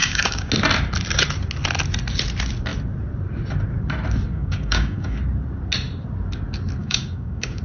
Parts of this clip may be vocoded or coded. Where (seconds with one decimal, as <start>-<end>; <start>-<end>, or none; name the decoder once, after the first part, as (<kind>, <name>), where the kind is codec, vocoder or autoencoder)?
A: 0.0-0.5 (codec, DAC); 4.3-5.2; 6.8-7.6